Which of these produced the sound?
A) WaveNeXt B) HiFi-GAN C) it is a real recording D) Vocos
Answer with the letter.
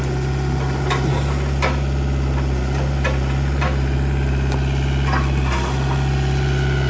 C